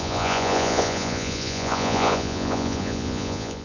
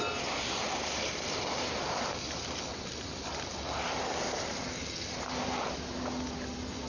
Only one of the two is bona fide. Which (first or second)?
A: second